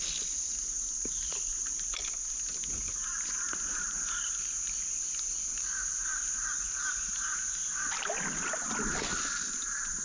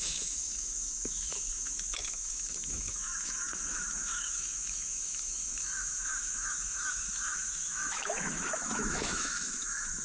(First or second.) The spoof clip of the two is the second